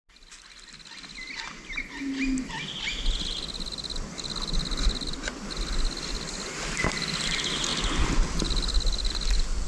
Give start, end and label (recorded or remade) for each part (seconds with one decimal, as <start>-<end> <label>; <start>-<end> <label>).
0.0-9.7 recorded